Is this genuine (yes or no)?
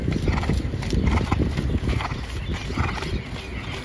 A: yes